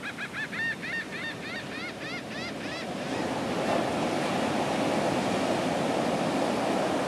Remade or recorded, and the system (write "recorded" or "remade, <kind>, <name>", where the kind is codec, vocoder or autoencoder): recorded